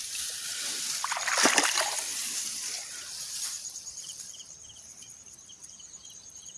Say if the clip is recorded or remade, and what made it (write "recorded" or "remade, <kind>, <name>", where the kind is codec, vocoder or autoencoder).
remade, vocoder, BigVGAN v2